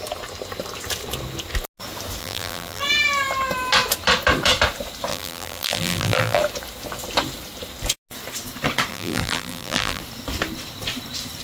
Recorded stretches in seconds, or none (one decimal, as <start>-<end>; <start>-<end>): 0.0-2.2; 2.8-5.1; 6.4-8.9; 10.0-11.4